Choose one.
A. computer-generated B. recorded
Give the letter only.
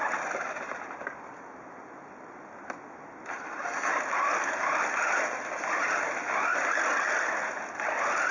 B